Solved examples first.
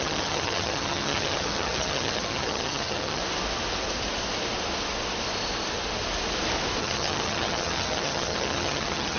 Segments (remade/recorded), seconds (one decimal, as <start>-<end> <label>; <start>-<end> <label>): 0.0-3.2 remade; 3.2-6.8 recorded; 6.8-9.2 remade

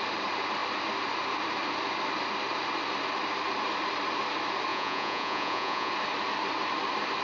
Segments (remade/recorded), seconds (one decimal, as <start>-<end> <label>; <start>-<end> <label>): 0.0-4.7 recorded; 4.7-5.9 remade; 5.9-7.2 recorded

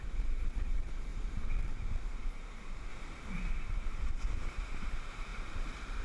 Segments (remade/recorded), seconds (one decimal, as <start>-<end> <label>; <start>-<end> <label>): 0.0-1.1 remade; 1.1-2.2 recorded; 2.2-2.9 remade; 2.9-3.5 recorded; 3.5-6.0 remade

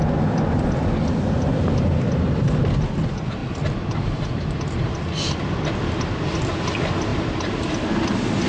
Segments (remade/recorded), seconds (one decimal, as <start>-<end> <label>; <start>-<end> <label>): 0.0-3.4 recorded; 3.4-6.4 remade; 6.4-7.1 recorded; 7.1-7.9 remade; 7.9-8.5 recorded

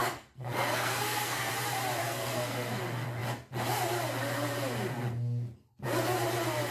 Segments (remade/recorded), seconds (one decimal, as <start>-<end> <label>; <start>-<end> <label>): 0.0-1.5 remade; 1.5-2.0 recorded; 2.0-2.8 remade; 2.8-6.7 recorded